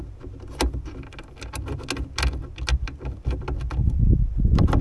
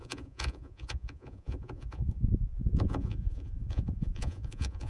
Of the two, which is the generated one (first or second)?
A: second